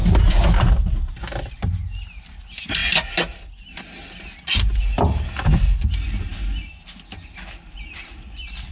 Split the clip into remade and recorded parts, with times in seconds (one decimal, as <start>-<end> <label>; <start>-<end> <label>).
0.0-8.7 recorded